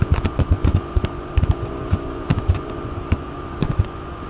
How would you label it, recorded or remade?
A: remade